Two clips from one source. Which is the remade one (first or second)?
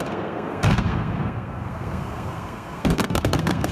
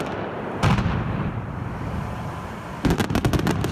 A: first